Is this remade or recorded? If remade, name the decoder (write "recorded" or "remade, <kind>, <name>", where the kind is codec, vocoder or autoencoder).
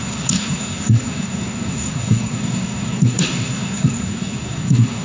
remade, codec, SNAC